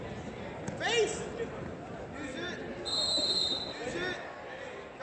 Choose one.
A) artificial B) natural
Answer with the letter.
B